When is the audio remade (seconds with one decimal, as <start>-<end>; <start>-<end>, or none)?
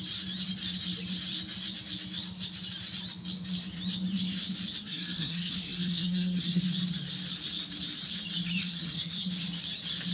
4.8-6.6; 8.6-9.3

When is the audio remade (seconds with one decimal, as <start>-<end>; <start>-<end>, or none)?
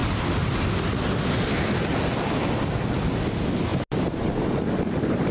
none